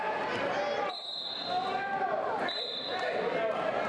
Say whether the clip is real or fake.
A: real